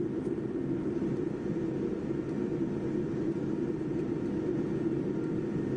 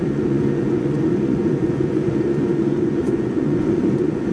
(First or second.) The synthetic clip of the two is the second